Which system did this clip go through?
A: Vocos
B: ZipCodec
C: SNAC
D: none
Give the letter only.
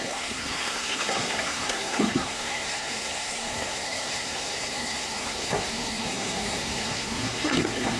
C